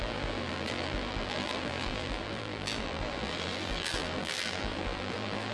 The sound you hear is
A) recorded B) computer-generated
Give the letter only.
B